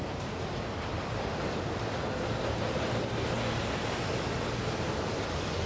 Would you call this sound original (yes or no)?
yes